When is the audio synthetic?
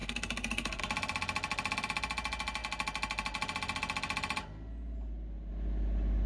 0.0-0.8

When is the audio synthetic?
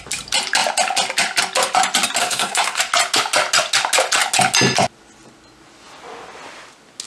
2.2-2.8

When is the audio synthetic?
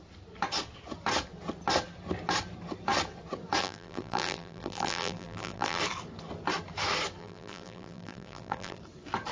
3.6-5.8; 7.2-8.8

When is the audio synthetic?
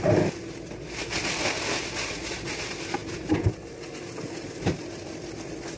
none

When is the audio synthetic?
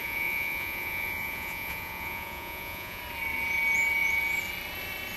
0.0-3.0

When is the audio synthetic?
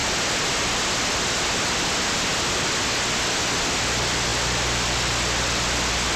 none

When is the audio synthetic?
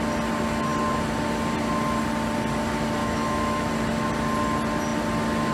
3.0-3.7